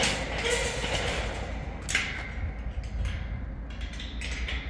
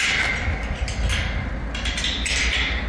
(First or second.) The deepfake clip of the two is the second